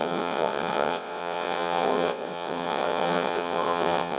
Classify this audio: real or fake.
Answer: fake